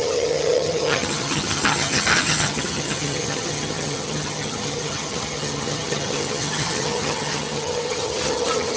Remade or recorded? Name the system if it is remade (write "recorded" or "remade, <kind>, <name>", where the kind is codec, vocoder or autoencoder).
remade, vocoder, HiFi-GAN